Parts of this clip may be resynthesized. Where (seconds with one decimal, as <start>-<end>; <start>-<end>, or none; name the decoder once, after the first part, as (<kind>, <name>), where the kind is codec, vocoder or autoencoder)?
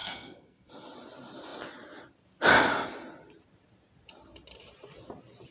0.0-0.7 (codec, SNAC)